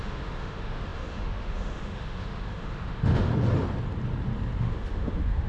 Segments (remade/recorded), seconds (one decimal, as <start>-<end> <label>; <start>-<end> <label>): 0.0-3.3 remade; 3.3-4.6 recorded; 4.6-5.5 remade